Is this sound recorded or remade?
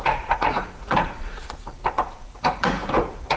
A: remade